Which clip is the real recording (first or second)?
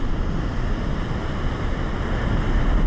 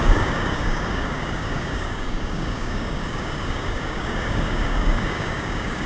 first